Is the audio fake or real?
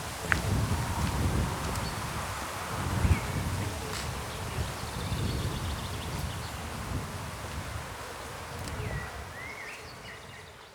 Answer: real